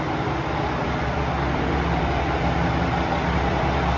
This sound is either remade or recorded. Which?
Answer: remade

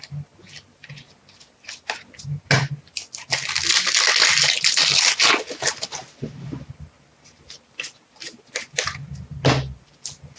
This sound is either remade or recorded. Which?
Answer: recorded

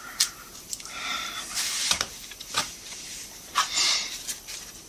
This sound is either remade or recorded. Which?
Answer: remade